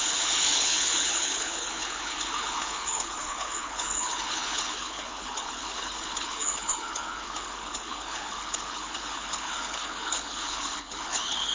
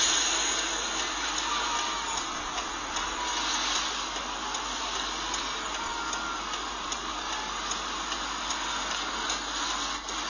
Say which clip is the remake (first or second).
first